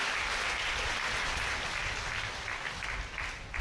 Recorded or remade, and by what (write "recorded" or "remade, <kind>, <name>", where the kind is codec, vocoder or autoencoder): recorded